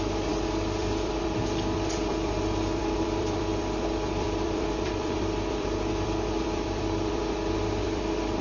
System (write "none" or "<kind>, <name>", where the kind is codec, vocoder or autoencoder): vocoder, BigVGAN v2